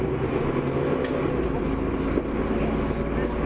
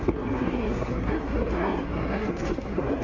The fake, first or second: second